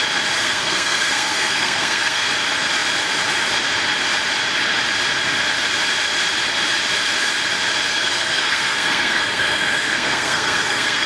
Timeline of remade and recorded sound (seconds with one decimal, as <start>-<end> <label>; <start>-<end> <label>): 0.0-0.4 recorded; 0.4-2.3 remade; 2.3-7.9 recorded; 7.9-11.1 remade